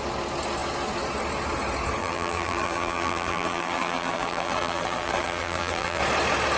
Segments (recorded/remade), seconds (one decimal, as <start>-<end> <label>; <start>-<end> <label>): 0.0-2.0 recorded; 2.0-6.0 remade; 6.0-6.6 recorded